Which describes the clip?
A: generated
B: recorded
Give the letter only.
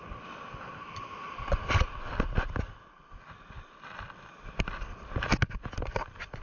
B